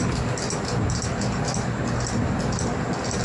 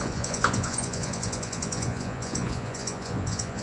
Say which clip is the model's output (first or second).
second